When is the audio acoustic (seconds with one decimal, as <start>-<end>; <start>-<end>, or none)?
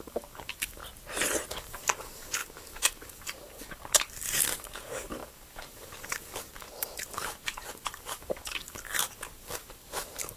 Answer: 0.8-1.5